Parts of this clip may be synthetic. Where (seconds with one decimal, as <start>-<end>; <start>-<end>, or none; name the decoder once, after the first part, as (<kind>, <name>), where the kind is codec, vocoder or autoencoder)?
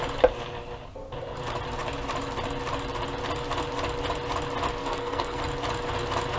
4.8-5.4 (codec, SNAC)